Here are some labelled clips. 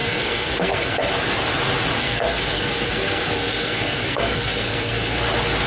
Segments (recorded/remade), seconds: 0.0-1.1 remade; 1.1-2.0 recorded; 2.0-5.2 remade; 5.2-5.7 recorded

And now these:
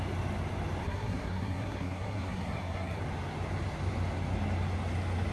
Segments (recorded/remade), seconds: 0.0-0.8 recorded; 0.8-3.0 remade; 3.0-5.3 recorded

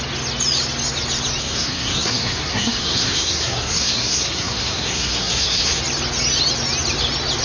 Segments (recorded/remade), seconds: 0.0-1.4 recorded; 1.4-5.8 remade; 5.8-7.4 recorded

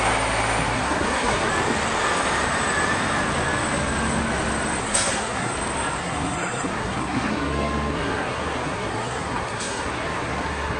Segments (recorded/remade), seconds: 0.0-0.7 recorded; 0.7-1.5 remade; 1.5-4.8 recorded; 4.8-5.5 remade; 5.5-6.0 recorded; 6.0-10.8 remade

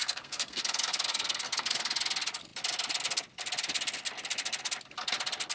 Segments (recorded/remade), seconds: 0.0-1.8 remade; 1.8-5.5 recorded

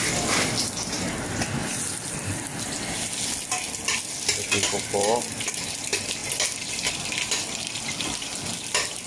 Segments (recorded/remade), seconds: 0.0-9.1 recorded

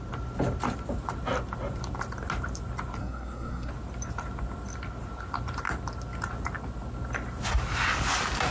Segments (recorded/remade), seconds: 0.0-3.0 recorded; 3.0-3.7 remade; 3.7-8.5 recorded